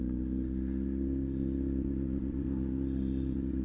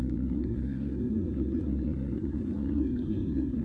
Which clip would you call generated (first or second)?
second